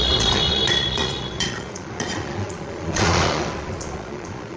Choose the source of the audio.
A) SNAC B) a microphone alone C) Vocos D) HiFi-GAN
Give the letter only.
C